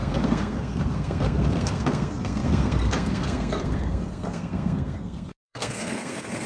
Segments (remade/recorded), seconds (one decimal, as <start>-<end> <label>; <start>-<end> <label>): 0.0-6.5 remade